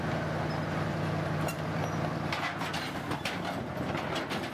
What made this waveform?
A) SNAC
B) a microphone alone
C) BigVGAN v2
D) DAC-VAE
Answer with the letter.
B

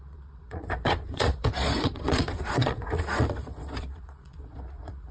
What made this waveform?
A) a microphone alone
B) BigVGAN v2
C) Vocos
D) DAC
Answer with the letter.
C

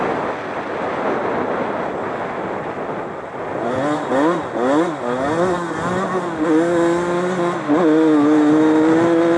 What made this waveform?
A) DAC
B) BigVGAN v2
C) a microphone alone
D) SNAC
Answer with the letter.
C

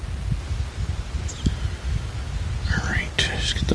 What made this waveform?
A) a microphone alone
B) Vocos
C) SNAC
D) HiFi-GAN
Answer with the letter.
A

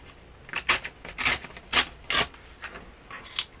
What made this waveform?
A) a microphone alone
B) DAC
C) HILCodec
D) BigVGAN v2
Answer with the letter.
A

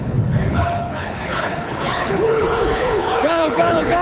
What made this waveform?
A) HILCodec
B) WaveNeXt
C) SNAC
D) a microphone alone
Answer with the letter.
A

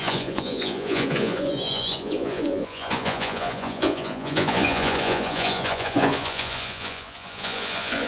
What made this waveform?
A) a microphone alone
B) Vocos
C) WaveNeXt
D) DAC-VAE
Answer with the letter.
B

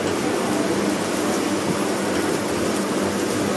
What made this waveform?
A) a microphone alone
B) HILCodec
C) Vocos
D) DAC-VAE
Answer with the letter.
A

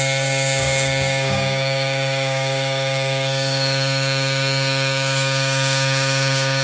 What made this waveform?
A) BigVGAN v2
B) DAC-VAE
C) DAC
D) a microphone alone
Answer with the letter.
C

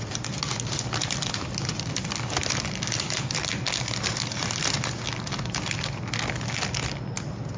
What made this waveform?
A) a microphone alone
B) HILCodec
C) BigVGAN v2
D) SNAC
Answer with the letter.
A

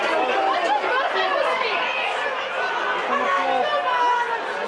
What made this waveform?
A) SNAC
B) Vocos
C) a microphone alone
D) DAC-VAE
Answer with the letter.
C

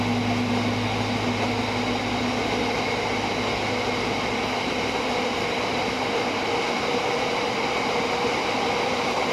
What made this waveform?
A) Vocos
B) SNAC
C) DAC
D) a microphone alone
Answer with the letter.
D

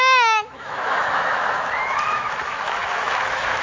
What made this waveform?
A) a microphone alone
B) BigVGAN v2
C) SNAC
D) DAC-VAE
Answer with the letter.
D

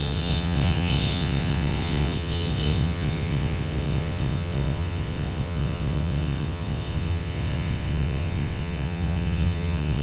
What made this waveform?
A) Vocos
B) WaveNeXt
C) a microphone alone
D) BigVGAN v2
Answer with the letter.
B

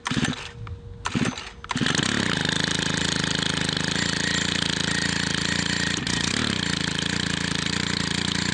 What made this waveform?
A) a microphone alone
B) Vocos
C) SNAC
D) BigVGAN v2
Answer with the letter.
A